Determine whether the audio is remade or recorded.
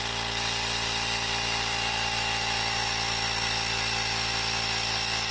recorded